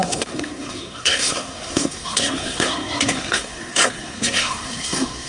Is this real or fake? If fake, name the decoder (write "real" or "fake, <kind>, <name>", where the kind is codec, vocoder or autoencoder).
fake, codec, SNAC